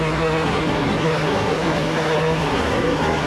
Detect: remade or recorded remade